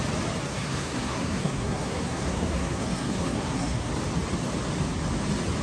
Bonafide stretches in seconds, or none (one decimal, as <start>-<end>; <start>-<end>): 0.0-0.5; 3.9-5.6